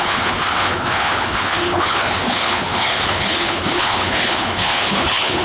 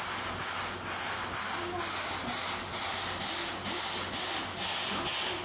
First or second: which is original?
second